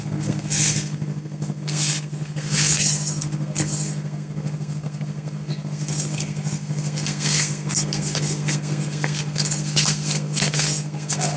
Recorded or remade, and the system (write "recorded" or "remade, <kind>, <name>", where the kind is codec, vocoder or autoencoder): remade, codec, SNAC